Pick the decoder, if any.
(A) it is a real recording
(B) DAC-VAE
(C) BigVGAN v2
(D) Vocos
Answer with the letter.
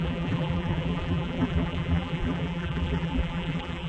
C